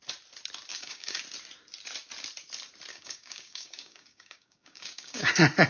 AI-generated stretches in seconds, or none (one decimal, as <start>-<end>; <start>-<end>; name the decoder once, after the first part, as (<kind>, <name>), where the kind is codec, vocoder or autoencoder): 0.7-1.2 (codec, DAC); 2.9-5.3